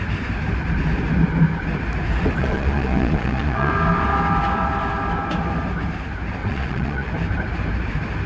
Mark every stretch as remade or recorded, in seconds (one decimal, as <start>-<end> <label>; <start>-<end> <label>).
0.0-2.4 recorded; 2.4-3.7 remade; 3.7-6.4 recorded; 6.4-7.1 remade; 7.1-8.3 recorded